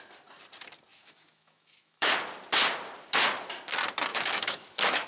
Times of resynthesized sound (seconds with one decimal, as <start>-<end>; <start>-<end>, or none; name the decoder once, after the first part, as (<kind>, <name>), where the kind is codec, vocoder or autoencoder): 0.9-2.1 (autoencoder, DAC-VAE); 4.1-5.1